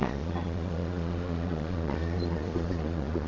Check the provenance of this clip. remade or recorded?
remade